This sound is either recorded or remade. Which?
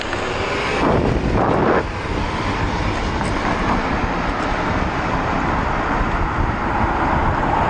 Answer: recorded